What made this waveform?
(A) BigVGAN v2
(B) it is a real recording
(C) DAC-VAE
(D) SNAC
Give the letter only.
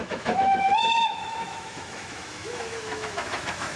C